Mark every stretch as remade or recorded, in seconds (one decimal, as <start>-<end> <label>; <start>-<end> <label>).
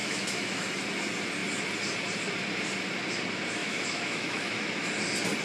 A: 0.0-0.7 remade; 0.7-3.6 recorded; 3.6-4.9 remade; 4.9-5.4 recorded